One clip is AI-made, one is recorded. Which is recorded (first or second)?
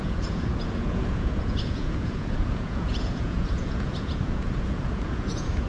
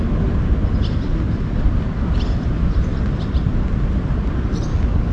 second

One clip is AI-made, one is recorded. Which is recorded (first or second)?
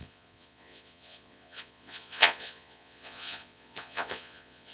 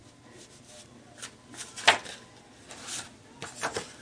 second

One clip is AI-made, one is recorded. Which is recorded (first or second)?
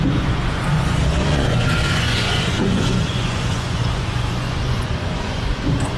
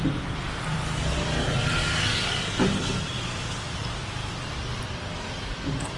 second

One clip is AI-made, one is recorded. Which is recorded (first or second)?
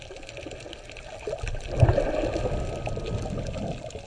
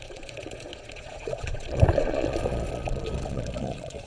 first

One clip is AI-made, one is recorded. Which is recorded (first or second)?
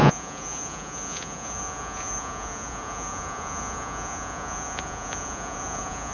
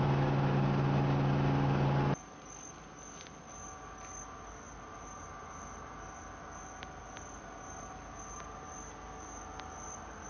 second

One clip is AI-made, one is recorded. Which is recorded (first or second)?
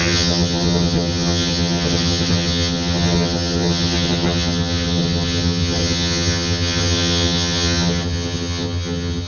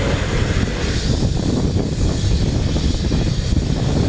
second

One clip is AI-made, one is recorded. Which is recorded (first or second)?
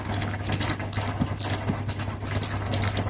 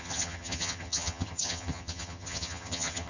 first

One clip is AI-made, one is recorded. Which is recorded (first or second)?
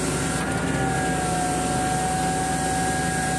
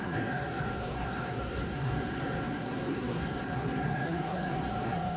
first